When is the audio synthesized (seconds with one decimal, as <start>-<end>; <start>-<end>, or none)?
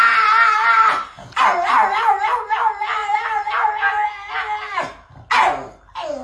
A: none